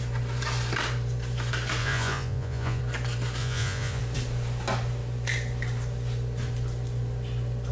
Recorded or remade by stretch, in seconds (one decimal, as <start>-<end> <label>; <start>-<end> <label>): 0.0-1.8 recorded; 1.8-2.8 remade; 2.8-3.4 recorded; 3.4-4.0 remade; 4.0-7.7 recorded